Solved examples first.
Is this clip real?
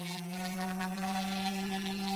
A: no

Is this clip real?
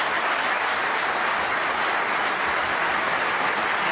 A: yes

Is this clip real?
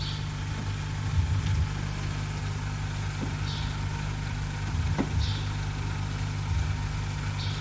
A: yes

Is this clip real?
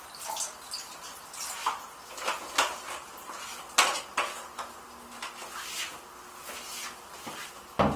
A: yes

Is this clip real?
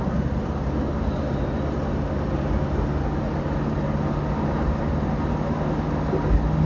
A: yes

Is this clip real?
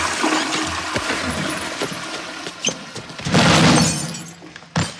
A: yes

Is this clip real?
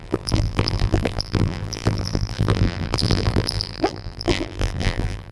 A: no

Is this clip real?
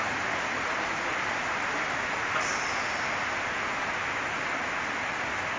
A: yes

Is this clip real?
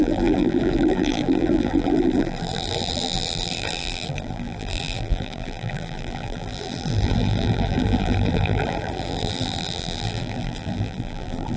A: no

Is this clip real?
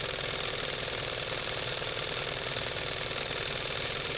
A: no